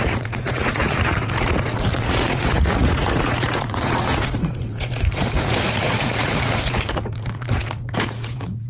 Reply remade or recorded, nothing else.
remade